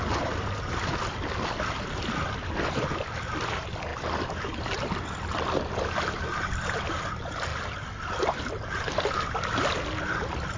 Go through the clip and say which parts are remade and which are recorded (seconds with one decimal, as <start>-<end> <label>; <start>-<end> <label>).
0.0-10.6 recorded